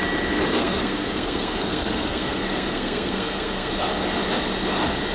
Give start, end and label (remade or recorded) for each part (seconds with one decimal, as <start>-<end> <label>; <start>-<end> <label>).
0.0-0.6 recorded; 0.6-3.7 remade; 3.7-5.1 recorded